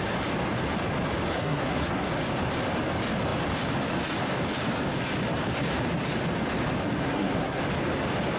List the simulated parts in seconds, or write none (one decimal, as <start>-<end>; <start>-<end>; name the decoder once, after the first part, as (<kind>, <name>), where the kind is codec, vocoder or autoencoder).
1.3-2.1 (codec, SNAC); 7.0-7.6